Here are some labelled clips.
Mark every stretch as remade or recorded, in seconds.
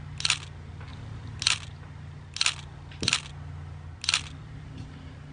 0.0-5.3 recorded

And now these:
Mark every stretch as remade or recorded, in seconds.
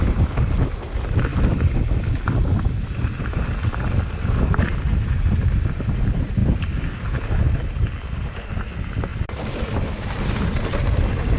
0.0-9.1 recorded; 9.1-9.6 remade; 9.6-11.4 recorded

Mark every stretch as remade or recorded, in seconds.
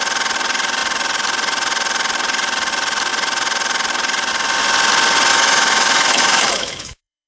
0.0-5.3 recorded; 5.3-7.3 remade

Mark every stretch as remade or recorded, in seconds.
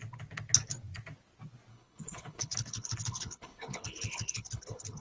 0.0-1.7 recorded; 1.7-5.0 remade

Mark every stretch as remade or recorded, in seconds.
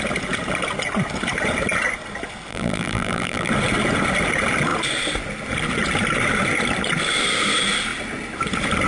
0.0-2.5 recorded; 2.5-3.5 remade; 3.5-8.9 recorded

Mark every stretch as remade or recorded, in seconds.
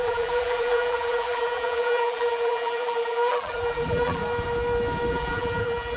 0.0-4.2 remade; 4.2-5.1 recorded; 5.1-6.0 remade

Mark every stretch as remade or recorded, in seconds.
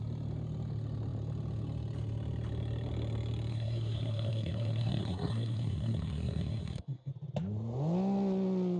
0.0-3.5 recorded; 3.5-7.1 remade; 7.1-8.8 recorded